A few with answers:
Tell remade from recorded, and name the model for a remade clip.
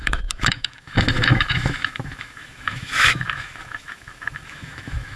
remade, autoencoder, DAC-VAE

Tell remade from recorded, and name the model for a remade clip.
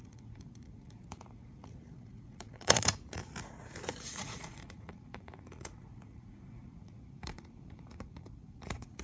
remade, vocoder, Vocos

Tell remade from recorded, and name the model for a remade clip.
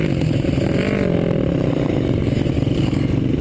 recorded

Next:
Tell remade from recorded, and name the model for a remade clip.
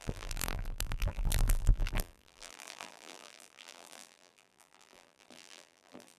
remade, vocoder, BigVGAN v2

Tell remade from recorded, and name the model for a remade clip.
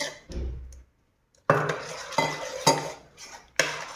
recorded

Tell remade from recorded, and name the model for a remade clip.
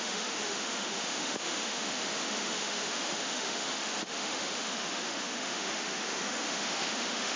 remade, autoencoder, DAC-VAE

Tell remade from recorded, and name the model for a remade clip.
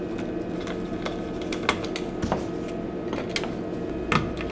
recorded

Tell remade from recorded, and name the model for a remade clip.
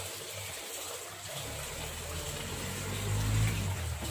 recorded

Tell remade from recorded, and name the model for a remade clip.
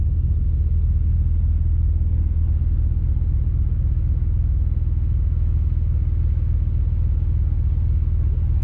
recorded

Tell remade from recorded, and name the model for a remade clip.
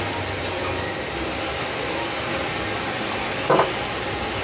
recorded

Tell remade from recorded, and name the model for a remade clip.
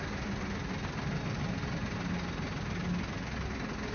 recorded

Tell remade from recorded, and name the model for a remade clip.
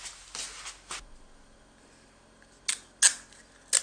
recorded